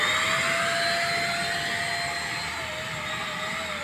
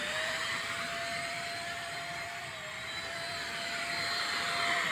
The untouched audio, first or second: first